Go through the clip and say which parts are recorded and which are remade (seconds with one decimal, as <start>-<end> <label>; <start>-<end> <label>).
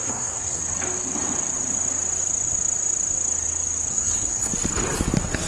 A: 0.0-0.6 remade; 0.6-3.9 recorded; 3.9-4.5 remade; 4.5-5.5 recorded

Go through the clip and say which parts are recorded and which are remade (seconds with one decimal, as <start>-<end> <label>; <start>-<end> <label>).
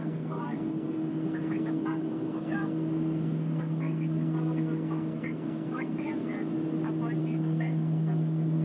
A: 0.0-6.5 remade; 6.5-7.2 recorded; 7.2-8.6 remade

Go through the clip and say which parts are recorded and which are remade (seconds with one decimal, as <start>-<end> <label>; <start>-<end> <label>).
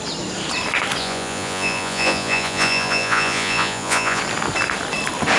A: 0.0-1.0 recorded; 1.0-4.2 remade; 4.2-5.4 recorded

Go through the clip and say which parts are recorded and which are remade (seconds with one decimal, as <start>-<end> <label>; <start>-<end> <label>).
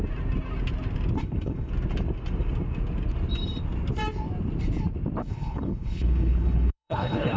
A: 0.0-1.2 recorded; 1.2-1.7 remade; 1.7-5.2 recorded; 5.2-7.4 remade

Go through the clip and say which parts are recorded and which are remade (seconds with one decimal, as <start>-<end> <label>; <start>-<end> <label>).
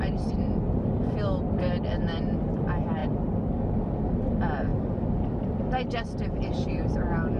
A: 0.0-7.4 recorded